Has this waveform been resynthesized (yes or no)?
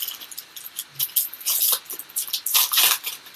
no